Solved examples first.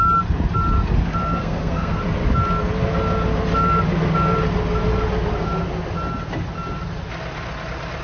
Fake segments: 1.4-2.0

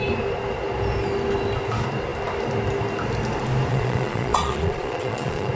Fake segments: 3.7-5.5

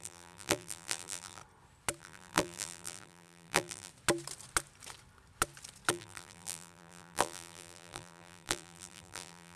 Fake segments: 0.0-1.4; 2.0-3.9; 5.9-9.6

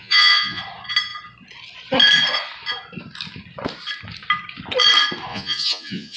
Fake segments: 0.0-0.6; 5.3-6.2